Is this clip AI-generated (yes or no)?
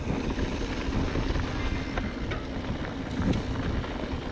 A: no